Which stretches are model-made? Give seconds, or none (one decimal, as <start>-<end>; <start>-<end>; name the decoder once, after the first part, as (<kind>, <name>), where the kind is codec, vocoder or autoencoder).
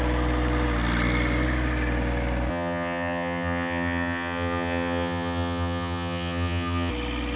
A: 2.5-6.9 (vocoder, HiFi-GAN)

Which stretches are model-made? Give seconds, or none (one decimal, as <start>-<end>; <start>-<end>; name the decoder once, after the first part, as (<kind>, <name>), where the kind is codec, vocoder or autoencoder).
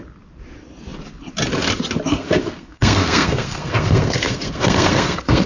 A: 2.1-5.5 (codec, SNAC)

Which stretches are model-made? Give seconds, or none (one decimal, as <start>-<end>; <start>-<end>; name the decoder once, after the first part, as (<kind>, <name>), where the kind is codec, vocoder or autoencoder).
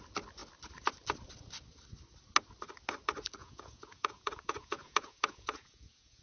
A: 3.4-6.2 (vocoder, Vocos)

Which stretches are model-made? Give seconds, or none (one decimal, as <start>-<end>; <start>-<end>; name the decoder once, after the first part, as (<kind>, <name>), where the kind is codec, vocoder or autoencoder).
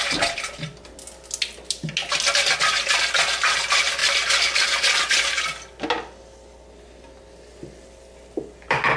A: none